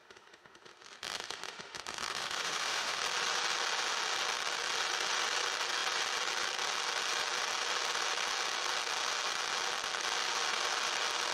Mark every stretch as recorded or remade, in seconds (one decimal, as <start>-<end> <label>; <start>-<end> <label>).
0.0-3.0 remade; 3.0-11.3 recorded